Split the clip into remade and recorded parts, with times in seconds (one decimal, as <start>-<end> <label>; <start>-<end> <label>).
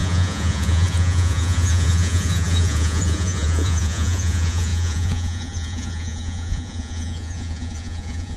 0.0-8.4 remade